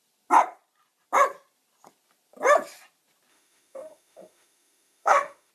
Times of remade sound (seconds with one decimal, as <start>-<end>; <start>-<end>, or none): 3.3-5.5